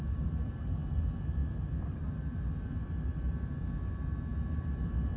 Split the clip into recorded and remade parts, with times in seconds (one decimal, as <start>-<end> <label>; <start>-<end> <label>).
0.0-5.2 recorded